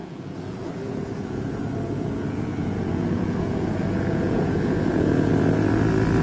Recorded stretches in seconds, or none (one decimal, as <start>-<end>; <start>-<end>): 5.3-6.2